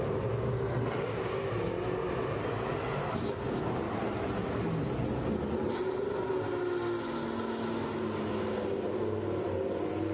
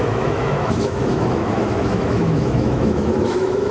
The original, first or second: first